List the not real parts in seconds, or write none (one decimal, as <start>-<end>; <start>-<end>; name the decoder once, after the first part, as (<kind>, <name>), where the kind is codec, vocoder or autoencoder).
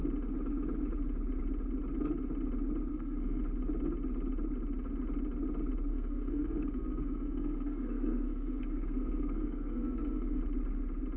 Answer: 2.9-3.4 (codec, SNAC); 5.9-10.4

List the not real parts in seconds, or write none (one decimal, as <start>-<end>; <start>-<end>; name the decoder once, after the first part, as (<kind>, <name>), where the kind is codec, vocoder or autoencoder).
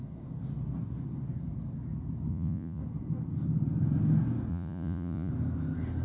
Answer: 2.3-2.8 (vocoder, Vocos); 4.5-5.3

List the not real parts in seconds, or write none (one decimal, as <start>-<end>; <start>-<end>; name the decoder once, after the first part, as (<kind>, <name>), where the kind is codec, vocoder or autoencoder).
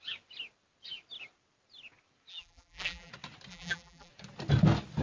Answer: 2.3-3.1 (vocoder, BigVGAN v2); 3.5-4.1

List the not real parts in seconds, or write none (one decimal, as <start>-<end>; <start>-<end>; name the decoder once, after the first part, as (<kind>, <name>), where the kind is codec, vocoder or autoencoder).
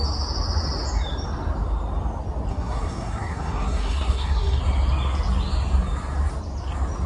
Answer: 2.5-4.6 (codec, SNAC)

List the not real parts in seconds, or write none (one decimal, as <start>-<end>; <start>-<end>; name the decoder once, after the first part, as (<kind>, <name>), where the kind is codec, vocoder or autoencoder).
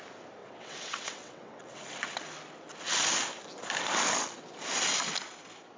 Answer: 0.4-1.8 (vocoder, WaveNeXt)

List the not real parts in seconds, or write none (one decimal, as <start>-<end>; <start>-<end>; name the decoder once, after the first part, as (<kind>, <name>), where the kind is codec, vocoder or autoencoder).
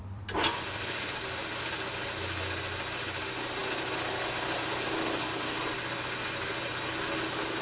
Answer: 0.0-2.1 (vocoder, BigVGAN v2)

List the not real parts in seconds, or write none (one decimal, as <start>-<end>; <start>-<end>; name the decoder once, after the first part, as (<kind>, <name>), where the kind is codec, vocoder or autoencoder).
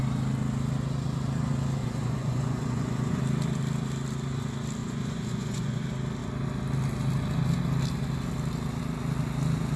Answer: 1.8-3.2 (vocoder, Vocos); 4.8-5.8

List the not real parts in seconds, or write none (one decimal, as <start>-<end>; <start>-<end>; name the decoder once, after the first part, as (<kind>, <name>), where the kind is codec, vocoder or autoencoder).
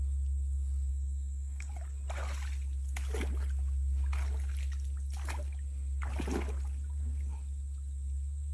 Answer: 0.9-1.7 (codec, SNAC)